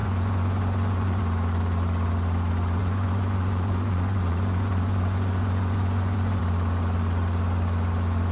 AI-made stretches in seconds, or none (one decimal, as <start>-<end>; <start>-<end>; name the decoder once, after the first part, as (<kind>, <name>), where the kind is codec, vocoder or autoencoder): 0.0-1.2 (vocoder, Vocos); 2.8-6.4